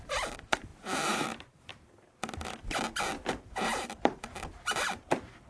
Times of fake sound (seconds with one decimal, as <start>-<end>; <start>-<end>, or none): 0.0-1.7; 3.4-5.5